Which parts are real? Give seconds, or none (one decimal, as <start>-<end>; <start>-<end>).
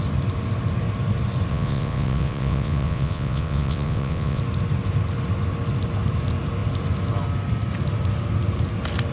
0.0-1.5; 4.4-9.1